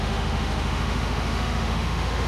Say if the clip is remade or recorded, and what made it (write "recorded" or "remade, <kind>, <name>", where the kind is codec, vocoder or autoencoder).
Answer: remade, autoencoder, DAC-VAE